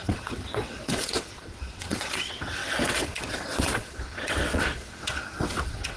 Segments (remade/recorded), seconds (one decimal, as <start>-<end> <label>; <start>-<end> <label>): 0.0-6.0 remade